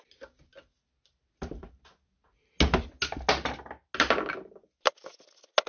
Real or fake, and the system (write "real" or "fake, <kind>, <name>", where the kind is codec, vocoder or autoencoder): real